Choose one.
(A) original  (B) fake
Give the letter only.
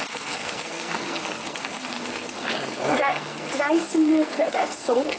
B